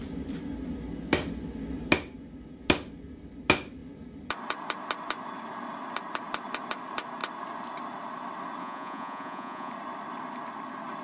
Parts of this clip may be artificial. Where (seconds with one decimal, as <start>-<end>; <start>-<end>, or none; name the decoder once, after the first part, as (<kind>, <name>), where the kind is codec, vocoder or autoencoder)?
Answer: 8.6-9.7 (vocoder, Vocos)